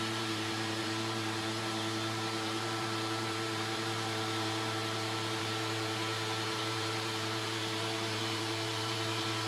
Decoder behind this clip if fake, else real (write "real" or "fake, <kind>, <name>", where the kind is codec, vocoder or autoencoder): fake, vocoder, BigVGAN v2